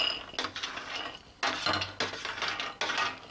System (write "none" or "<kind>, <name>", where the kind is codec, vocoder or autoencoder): none